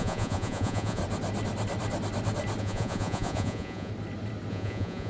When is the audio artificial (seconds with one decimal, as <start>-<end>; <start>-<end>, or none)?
0.0-1.0; 2.6-3.9; 4.5-5.1